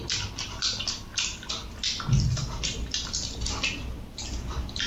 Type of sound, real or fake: real